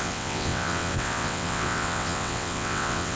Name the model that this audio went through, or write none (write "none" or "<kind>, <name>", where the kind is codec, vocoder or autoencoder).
vocoder, WaveNeXt